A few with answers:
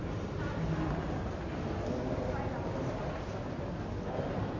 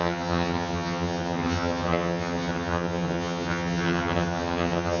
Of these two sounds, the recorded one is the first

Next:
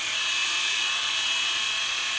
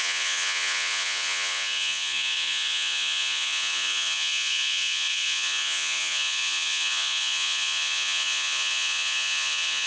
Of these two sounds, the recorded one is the first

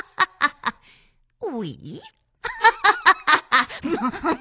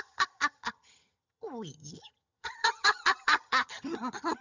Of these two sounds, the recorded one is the first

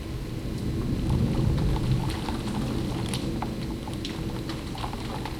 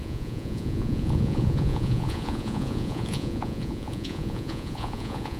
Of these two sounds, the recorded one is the first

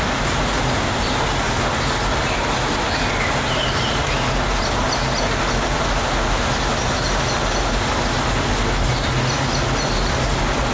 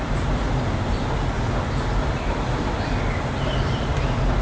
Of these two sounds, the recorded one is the first